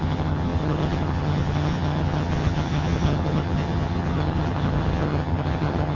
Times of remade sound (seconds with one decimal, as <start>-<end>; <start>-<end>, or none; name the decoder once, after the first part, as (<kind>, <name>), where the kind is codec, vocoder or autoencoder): 0.0-5.9 (vocoder, HiFi-GAN)